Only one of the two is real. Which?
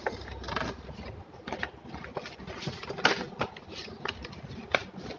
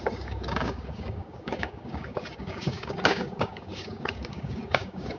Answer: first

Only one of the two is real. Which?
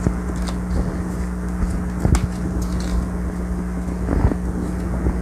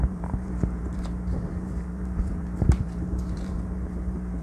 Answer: first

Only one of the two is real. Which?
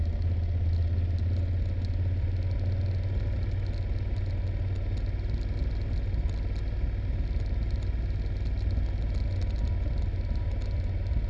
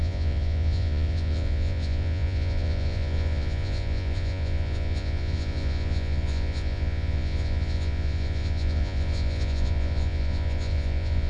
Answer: first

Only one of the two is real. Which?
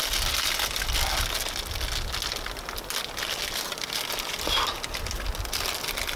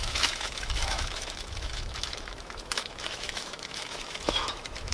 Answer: first